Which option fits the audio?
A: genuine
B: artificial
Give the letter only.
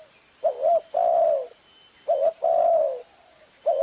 A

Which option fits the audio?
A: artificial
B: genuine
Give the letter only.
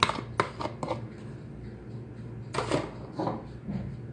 B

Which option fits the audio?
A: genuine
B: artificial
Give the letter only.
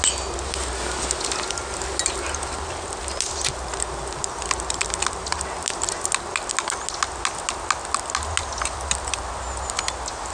A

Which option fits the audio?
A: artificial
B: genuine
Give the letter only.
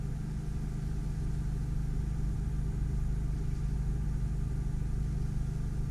B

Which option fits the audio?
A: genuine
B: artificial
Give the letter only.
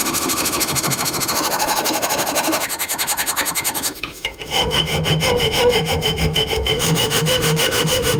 B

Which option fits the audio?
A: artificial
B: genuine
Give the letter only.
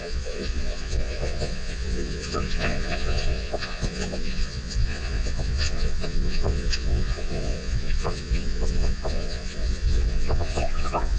A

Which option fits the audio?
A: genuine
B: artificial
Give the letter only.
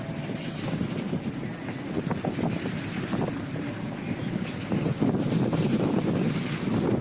A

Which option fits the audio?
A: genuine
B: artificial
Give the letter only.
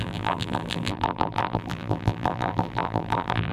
B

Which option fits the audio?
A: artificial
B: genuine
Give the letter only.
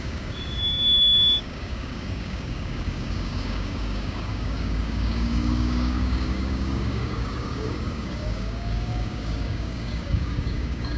A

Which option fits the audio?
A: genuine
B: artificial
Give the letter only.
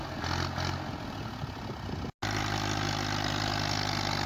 A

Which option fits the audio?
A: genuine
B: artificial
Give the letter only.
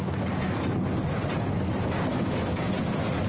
A